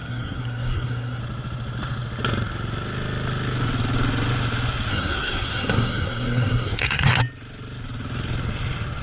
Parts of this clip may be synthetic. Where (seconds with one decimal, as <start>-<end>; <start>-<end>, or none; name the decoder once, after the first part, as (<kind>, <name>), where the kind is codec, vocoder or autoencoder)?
0.0-1.2 (codec, SNAC); 4.9-7.2